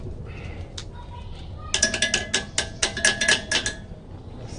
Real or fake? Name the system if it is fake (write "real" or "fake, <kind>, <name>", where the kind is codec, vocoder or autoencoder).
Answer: real